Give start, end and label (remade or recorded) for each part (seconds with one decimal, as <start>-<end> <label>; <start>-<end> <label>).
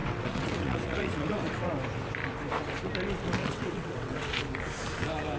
0.0-1.7 remade; 1.7-3.4 recorded; 3.4-4.4 remade; 4.4-5.4 recorded